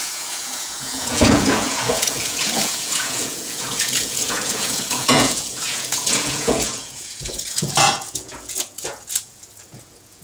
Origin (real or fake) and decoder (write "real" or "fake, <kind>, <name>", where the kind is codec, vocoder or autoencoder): fake, vocoder, Vocos